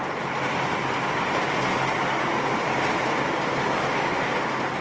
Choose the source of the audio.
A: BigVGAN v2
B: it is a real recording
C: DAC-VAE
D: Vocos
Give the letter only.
B